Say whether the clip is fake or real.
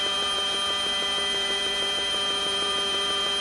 fake